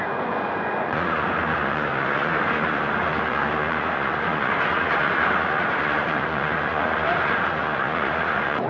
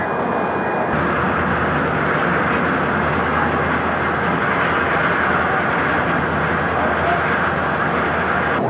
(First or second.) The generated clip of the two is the first